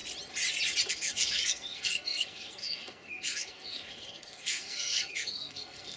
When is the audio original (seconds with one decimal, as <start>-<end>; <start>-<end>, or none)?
0.0-0.9